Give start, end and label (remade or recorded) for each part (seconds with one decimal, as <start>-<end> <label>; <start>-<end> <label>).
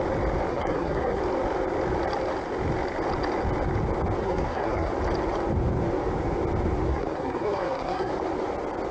0.0-0.5 recorded; 0.5-1.2 remade; 1.2-4.2 recorded; 4.2-4.9 remade; 4.9-6.9 recorded; 6.9-8.1 remade; 8.1-8.9 recorded